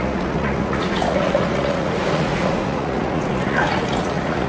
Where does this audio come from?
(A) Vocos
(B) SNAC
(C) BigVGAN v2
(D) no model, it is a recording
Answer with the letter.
A